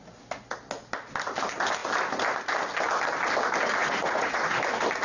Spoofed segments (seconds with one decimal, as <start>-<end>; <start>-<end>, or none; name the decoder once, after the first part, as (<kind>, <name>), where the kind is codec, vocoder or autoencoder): 3.8-4.6 (vocoder, Vocos)